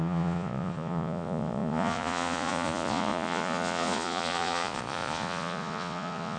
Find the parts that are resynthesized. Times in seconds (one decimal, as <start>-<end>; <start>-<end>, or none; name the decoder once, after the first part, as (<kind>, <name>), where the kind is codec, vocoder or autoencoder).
0.0-6.4 (vocoder, Vocos)